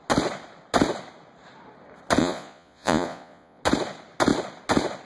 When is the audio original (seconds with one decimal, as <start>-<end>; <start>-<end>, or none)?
0.0-2.2; 3.6-5.0